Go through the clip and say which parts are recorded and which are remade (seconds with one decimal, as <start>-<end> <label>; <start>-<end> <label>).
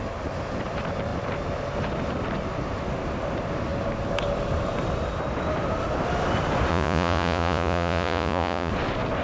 0.0-6.7 recorded; 6.7-8.7 remade; 8.7-9.2 recorded